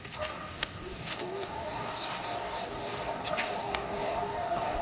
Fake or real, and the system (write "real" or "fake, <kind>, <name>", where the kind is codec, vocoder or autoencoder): fake, codec, DAC